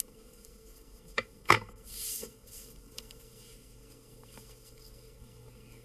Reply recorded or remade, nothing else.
remade